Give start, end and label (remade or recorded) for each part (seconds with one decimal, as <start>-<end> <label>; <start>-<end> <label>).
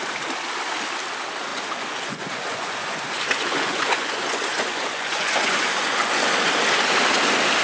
0.0-1.5 recorded; 1.5-6.1 remade; 6.1-7.6 recorded